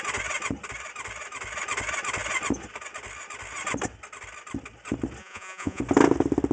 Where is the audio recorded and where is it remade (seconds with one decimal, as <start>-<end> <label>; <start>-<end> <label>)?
0.0-5.2 recorded; 5.2-5.8 remade; 5.8-6.5 recorded